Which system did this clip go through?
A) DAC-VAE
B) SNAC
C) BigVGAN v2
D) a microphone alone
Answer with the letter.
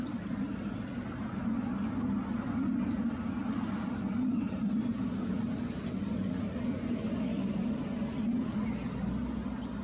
D